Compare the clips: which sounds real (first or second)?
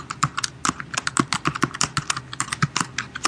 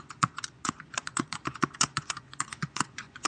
first